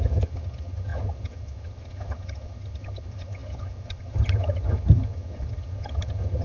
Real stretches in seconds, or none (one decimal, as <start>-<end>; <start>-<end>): none